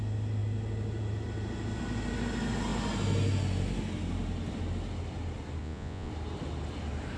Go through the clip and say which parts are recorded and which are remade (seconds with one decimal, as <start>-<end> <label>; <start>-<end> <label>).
0.0-5.6 recorded; 5.6-6.1 remade; 6.1-7.2 recorded